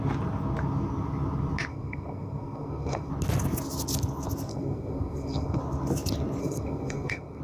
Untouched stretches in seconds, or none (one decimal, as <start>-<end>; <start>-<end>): 0.0-1.7; 3.1-4.5; 5.6-6.4